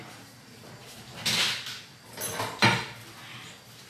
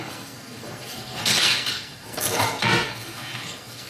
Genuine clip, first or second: first